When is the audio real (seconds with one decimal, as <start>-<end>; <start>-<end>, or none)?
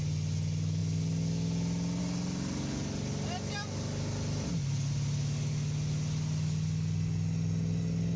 0.0-8.2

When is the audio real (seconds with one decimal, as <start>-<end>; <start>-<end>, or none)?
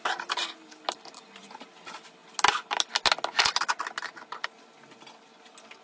0.0-5.8